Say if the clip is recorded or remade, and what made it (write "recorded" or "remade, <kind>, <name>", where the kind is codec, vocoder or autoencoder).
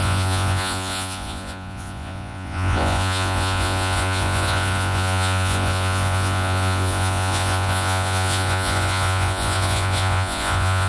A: remade, vocoder, Vocos